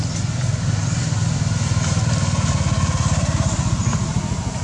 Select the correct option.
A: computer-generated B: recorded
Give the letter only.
B